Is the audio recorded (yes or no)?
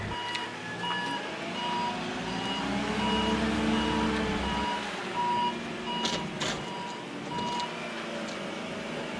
yes